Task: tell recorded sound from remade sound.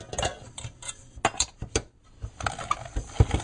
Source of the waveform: recorded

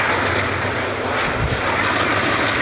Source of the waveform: recorded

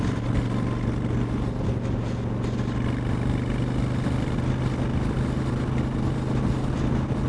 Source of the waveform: recorded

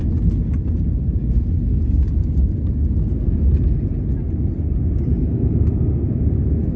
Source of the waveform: recorded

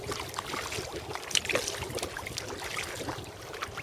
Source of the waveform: recorded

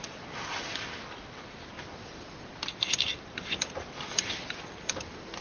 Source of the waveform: recorded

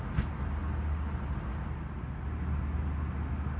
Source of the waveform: recorded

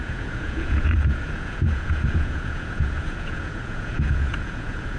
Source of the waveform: remade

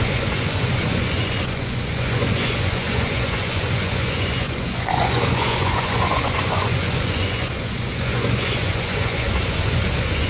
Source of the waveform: remade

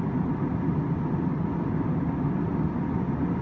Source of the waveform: recorded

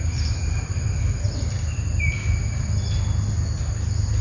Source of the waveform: recorded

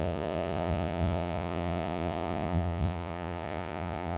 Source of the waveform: remade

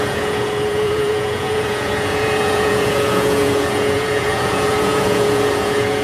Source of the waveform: remade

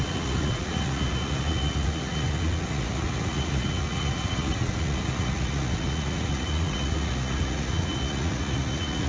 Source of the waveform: remade